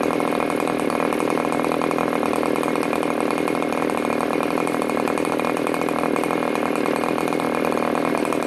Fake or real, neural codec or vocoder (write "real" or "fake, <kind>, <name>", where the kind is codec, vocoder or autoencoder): real